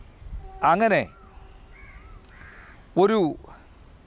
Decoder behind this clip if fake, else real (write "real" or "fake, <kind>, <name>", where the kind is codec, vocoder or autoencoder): real